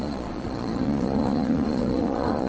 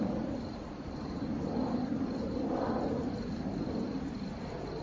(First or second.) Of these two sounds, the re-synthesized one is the first